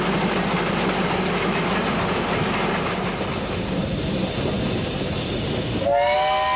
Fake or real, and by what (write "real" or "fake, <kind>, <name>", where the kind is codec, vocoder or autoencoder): real